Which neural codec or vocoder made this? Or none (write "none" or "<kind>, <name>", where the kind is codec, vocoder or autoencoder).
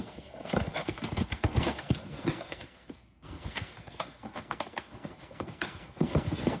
codec, SNAC